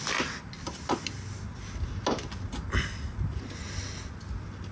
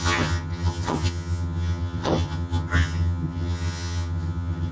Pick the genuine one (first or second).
first